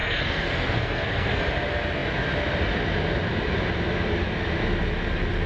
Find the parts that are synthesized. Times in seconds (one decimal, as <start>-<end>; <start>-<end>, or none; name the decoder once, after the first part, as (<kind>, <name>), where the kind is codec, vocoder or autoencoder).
0.0-1.4 (codec, SNAC)